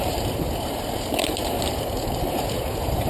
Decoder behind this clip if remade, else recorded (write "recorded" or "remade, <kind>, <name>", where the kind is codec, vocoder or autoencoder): remade, vocoder, BigVGAN v2